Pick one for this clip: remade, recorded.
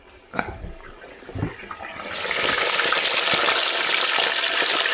recorded